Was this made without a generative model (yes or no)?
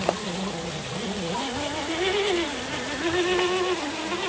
yes